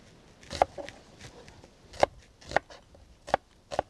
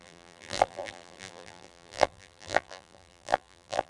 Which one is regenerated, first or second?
second